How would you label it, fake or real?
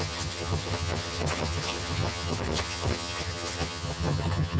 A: fake